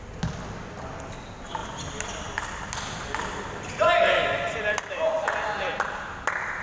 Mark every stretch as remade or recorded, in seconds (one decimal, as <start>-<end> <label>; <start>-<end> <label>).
0.0-6.6 recorded